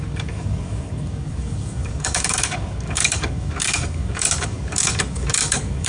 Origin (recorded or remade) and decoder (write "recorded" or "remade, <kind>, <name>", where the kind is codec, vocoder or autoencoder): remade, codec, DAC